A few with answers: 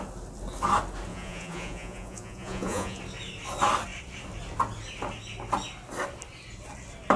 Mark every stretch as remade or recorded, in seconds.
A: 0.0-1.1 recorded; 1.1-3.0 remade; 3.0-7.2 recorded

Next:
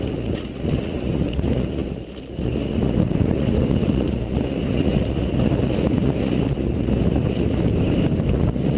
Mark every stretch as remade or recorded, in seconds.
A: 0.0-7.7 remade; 7.7-8.3 recorded; 8.3-8.8 remade

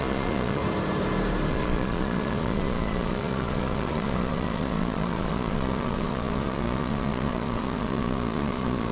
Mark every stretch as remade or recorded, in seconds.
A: 0.0-0.6 remade; 0.6-1.5 recorded; 1.5-8.9 remade